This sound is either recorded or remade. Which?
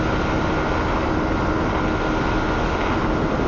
recorded